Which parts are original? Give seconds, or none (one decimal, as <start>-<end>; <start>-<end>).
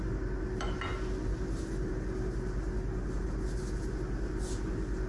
0.0-5.1